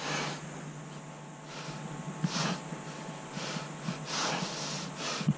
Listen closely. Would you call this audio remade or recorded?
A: recorded